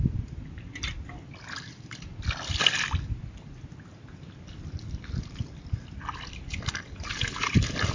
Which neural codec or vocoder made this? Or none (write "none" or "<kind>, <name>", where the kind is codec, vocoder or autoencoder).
none